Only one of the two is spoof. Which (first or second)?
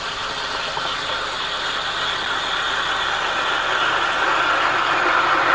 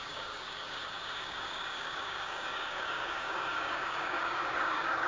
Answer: second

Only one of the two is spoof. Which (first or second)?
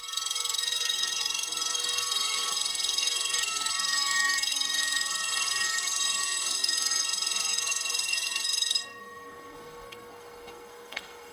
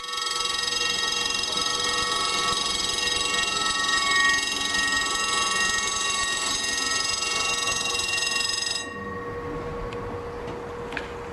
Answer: first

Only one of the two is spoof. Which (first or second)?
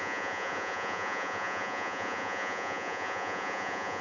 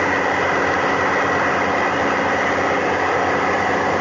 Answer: first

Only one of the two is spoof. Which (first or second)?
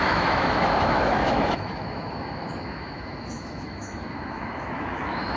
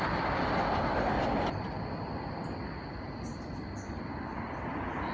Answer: first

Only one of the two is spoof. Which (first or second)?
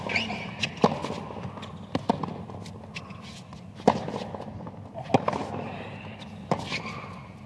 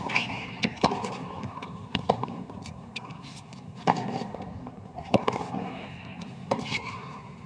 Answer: second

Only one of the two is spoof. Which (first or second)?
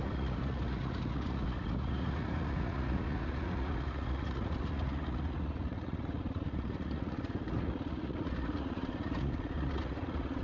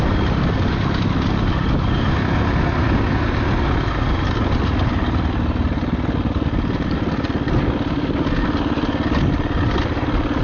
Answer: first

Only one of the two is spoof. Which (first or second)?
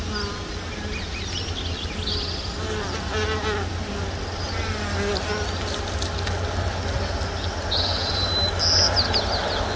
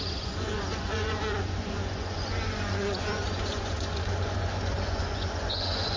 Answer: second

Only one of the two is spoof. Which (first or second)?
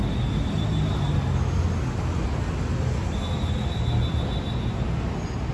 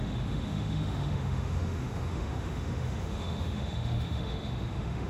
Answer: second